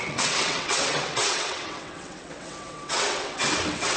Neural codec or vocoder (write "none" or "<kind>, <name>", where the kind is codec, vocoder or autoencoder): vocoder, WaveNeXt